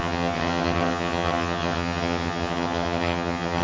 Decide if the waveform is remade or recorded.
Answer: remade